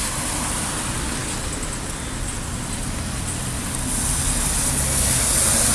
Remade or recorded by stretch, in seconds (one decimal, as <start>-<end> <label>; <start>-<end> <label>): 0.0-5.7 recorded